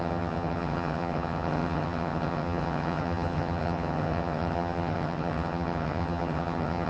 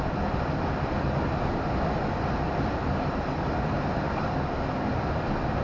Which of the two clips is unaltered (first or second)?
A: second